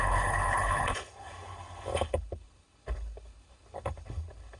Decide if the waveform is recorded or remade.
remade